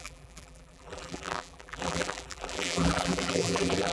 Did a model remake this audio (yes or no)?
yes